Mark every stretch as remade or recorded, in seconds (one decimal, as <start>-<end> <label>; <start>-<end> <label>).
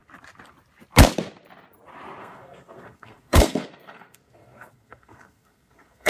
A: 0.0-2.2 recorded; 2.2-6.1 remade